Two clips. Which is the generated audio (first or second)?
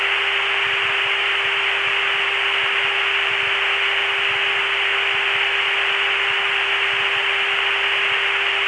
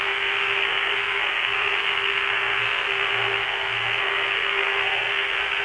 second